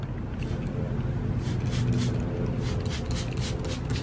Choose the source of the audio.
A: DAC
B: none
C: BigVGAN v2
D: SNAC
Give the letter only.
B